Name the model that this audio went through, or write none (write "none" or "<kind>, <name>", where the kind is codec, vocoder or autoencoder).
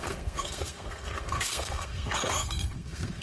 codec, SNAC